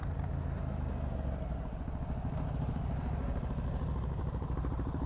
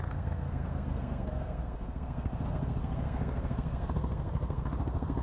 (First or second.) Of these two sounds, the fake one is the second